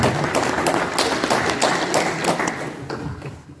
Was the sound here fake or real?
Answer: real